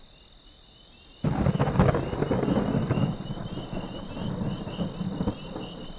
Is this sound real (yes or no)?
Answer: yes